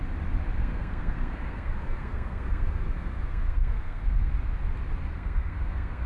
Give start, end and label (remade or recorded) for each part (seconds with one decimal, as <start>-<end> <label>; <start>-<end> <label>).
0.0-0.6 recorded; 0.6-4.3 remade; 4.3-5.1 recorded; 5.1-6.1 remade